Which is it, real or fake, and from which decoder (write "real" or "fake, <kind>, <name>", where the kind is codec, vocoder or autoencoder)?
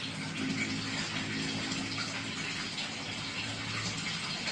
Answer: real